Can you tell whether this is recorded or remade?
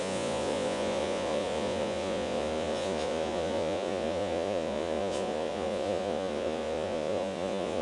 remade